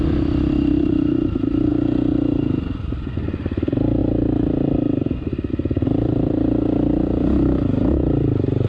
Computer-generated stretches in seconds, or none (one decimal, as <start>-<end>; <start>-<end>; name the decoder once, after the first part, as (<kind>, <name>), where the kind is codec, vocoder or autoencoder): 0.0-1.7 (vocoder, BigVGAN v2); 2.8-4.0; 5.5-8.7